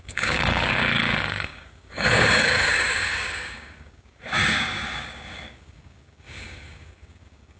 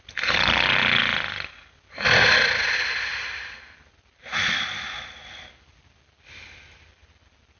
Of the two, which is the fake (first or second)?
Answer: first